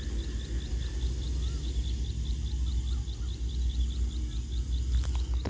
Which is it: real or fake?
real